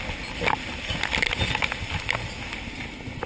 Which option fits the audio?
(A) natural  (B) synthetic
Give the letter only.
A